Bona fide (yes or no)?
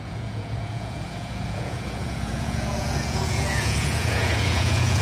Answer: no